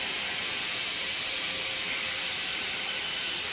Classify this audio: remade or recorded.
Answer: remade